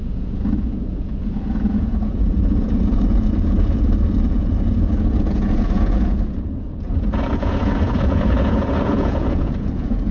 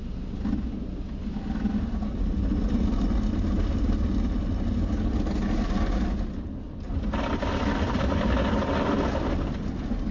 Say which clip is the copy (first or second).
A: first